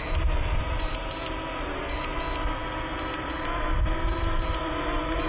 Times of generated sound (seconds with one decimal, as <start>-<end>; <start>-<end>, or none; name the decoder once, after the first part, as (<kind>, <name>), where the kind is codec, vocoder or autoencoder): 0.0-1.0 (vocoder, BigVGAN v2); 1.6-2.1; 3.1-5.3